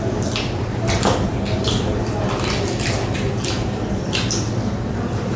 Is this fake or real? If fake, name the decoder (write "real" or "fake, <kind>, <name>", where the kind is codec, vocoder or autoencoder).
fake, vocoder, BigVGAN v2